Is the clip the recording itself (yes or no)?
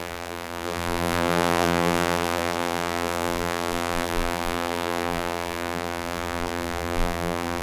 no